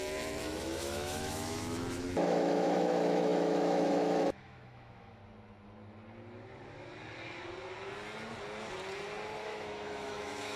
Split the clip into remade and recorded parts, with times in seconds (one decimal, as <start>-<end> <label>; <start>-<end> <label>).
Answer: 0.0-5.2 remade; 5.2-9.4 recorded; 9.4-10.6 remade